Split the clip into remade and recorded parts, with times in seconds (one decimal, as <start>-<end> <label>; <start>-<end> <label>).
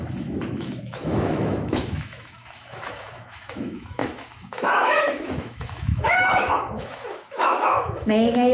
0.0-8.5 remade